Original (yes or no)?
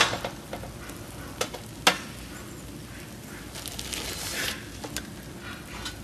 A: yes